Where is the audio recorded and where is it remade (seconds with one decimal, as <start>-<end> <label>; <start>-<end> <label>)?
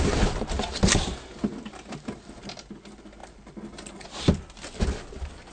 0.0-3.2 recorded; 3.2-4.3 remade; 4.3-5.5 recorded